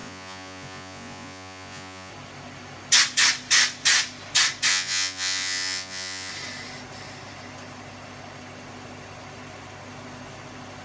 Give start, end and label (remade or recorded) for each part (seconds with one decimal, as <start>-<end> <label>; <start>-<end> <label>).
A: 0.0-2.1 remade; 2.1-4.7 recorded; 4.7-6.3 remade; 6.3-10.8 recorded